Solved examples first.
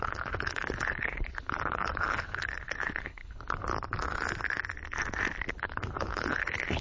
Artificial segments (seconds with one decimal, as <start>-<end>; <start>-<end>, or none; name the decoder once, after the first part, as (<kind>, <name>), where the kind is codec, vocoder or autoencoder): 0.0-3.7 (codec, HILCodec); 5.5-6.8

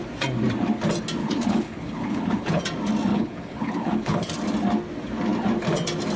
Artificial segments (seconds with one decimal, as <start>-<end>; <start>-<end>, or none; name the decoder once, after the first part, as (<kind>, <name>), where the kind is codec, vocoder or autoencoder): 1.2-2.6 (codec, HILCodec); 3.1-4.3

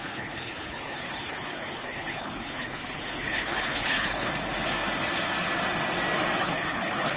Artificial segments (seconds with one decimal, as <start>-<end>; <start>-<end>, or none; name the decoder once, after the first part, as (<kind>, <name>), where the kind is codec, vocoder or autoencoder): 0.0-4.3 (codec, HILCodec); 6.4-7.2